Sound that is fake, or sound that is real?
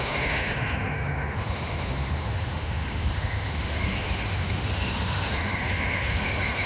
fake